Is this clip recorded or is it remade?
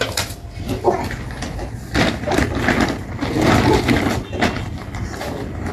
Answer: remade